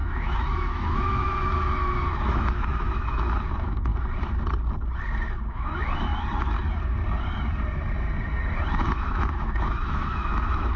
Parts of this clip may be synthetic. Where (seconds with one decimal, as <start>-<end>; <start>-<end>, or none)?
0.0-3.9; 5.5-6.1; 8.7-10.8